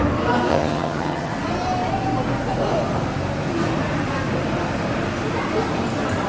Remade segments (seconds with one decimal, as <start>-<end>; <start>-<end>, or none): 0.5-1.3